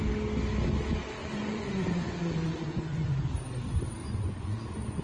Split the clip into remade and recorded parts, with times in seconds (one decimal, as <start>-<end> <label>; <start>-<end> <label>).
0.0-1.2 recorded; 1.2-3.2 remade; 3.2-4.0 recorded; 4.0-5.0 remade